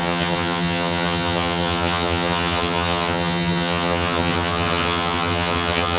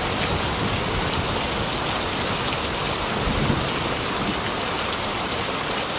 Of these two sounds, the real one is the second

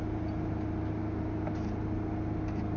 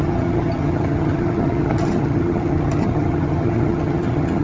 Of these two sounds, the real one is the first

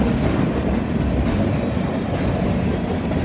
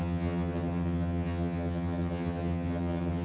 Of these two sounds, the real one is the first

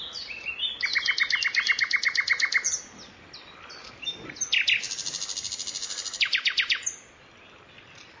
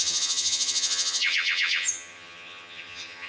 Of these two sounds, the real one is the first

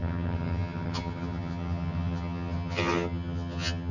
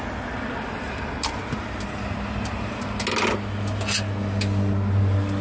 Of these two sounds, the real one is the second